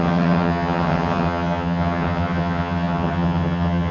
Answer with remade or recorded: remade